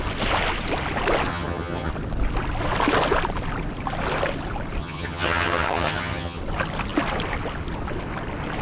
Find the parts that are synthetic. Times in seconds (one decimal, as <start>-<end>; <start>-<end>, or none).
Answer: 1.3-1.9; 4.8-6.4